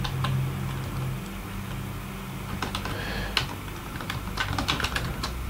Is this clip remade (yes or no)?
no